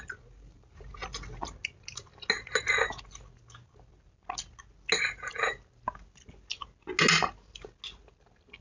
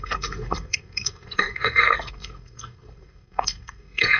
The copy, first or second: second